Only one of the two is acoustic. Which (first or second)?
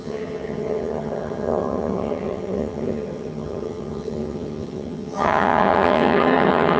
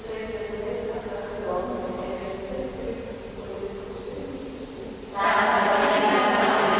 second